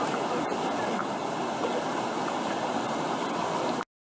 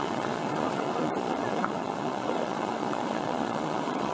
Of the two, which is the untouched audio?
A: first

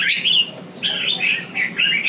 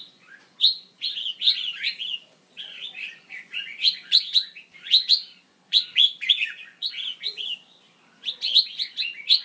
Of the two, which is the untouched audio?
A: first